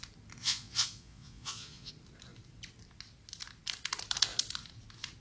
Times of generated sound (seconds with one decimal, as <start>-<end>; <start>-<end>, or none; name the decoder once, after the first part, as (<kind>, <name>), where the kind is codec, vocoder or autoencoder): 0.4-1.9 (vocoder, Vocos)